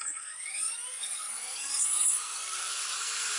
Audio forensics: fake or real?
fake